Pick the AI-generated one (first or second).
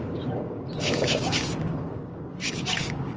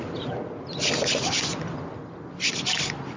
first